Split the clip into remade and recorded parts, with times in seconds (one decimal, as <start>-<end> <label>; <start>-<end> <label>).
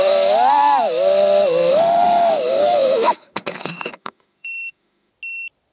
0.0-1.7 recorded; 1.7-5.1 remade; 5.1-5.7 recorded